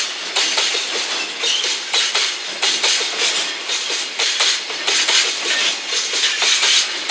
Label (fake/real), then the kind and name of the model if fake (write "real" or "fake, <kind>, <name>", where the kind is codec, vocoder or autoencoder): real